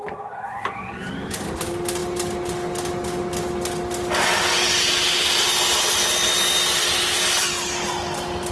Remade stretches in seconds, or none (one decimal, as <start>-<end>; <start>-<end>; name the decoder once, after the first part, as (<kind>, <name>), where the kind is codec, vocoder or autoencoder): none